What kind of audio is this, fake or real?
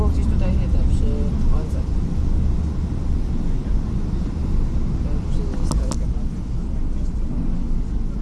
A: real